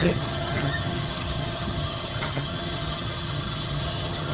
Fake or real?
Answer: fake